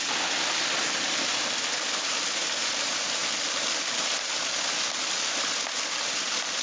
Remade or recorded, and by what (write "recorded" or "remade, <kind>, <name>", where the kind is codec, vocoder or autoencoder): recorded